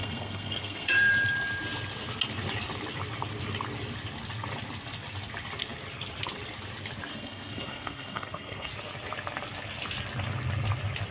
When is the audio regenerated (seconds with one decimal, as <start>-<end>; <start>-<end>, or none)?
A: 0.0-1.1; 7.1-8.7

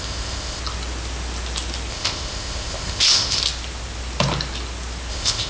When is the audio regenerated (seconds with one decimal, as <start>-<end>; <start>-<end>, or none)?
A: 0.0-0.6; 1.9-3.4; 5.1-5.5

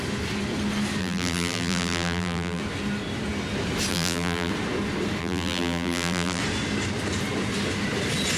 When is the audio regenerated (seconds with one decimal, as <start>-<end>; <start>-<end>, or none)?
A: 1.0-2.6; 3.9-4.5; 5.2-6.4

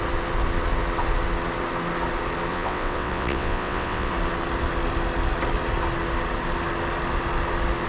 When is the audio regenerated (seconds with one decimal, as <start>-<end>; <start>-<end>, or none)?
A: 2.5-4.1

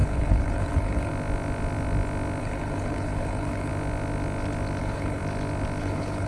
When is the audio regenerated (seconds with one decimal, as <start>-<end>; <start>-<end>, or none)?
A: 0.0-1.1; 2.4-3.7; 4.8-5.2; 5.8-6.3